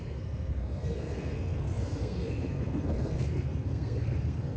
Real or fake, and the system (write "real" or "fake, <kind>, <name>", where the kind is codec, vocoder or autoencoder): fake, codec, SNAC